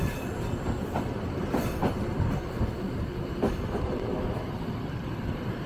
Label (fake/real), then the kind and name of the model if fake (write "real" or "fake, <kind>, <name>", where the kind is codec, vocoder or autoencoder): real